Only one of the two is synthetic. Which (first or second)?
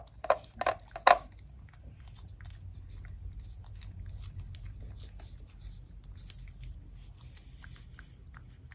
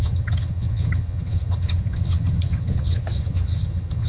second